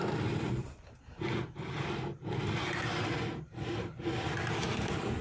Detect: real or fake fake